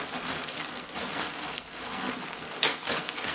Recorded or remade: remade